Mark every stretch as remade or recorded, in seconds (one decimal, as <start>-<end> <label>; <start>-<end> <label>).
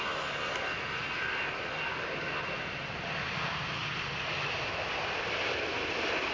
0.0-6.3 recorded